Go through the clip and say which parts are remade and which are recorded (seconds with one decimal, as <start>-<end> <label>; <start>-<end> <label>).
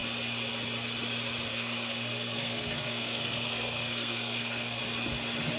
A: 0.0-1.5 recorded; 1.5-4.8 remade; 4.8-5.6 recorded